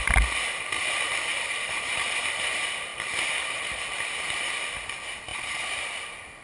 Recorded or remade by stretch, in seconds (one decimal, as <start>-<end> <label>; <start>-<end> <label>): 0.0-1.3 recorded; 1.3-2.2 remade; 2.2-2.9 recorded; 2.9-3.8 remade; 3.8-5.3 recorded; 5.3-6.0 remade; 6.0-6.4 recorded

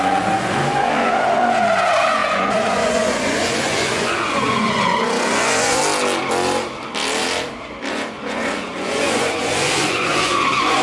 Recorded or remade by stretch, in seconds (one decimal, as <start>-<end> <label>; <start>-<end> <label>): 0.0-5.8 remade; 5.8-7.9 recorded; 7.9-10.8 remade

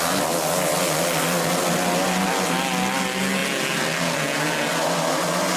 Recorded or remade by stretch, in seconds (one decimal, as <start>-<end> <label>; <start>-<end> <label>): 0.0-5.6 recorded

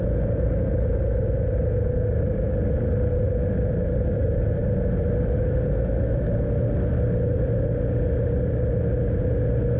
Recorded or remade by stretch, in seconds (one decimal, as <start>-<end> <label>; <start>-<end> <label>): 0.0-9.8 recorded